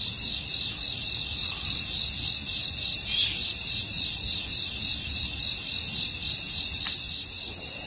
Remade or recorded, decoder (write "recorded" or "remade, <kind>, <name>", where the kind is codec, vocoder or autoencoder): recorded